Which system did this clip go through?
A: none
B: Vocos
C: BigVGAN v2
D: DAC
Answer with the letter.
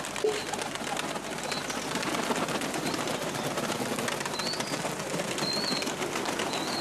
A